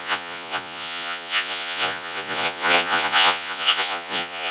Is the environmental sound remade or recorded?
remade